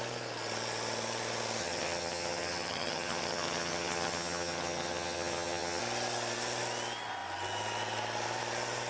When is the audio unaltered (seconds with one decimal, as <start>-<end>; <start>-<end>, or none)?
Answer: 0.0-1.6; 5.8-8.9